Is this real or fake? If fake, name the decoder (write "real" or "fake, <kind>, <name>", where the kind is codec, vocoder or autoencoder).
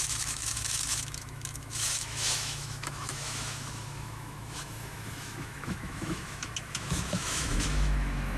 fake, autoencoder, DAC-VAE